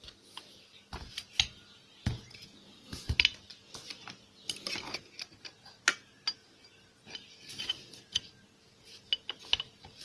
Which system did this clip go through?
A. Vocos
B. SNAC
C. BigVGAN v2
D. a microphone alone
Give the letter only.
D